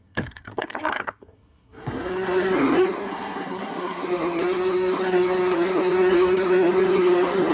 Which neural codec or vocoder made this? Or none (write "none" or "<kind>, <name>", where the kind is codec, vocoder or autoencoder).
codec, SNAC